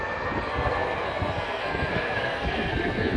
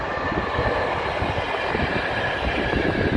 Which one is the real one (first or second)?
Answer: second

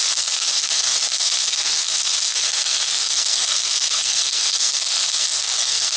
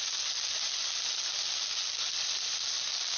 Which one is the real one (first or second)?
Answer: second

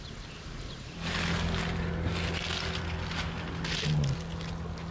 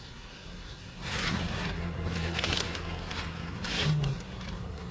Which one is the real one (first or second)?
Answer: first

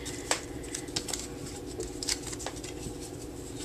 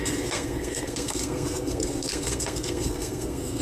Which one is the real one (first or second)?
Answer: first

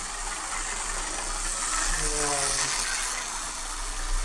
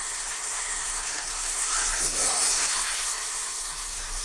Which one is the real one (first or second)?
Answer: first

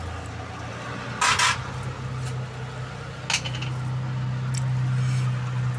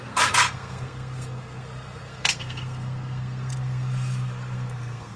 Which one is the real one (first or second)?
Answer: first